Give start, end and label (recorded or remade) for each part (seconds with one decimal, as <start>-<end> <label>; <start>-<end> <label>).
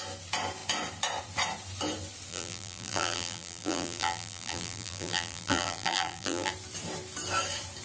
0.0-2.3 recorded; 2.3-6.5 remade; 6.5-7.8 recorded